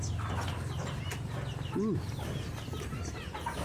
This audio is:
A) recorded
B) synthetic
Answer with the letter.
A